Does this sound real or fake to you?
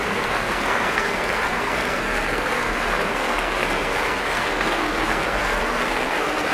fake